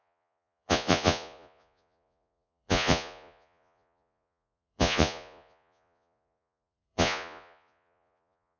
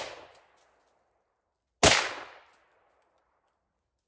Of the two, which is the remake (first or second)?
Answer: first